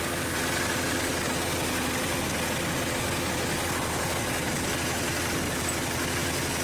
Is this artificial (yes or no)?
no